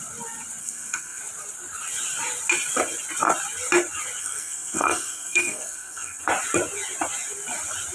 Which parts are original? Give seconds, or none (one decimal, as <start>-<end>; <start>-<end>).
0.0-0.6; 1.2-4.2; 6.2-7.9